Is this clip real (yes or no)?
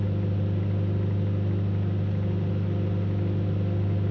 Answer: yes